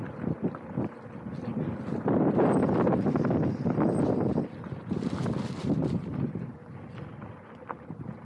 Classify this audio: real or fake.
real